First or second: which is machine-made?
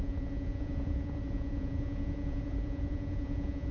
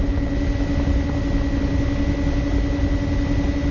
first